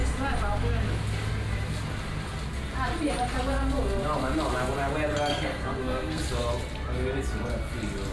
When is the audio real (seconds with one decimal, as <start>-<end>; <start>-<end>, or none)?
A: 0.0-5.3; 6.2-8.1